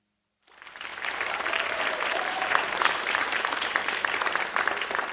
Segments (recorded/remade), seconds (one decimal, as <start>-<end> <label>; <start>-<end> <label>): 0.0-0.9 recorded; 0.9-4.0 remade; 4.0-5.1 recorded